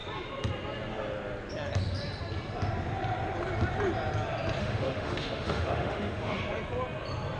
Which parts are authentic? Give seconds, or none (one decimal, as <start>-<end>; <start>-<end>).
0.0-4.6; 6.4-7.4